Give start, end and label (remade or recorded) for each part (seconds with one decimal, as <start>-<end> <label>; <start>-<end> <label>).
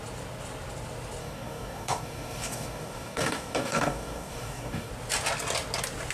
0.0-1.2 recorded; 1.2-4.9 remade; 4.9-6.1 recorded